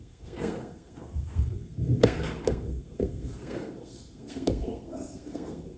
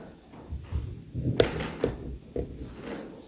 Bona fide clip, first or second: second